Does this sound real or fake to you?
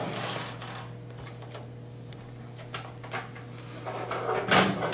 real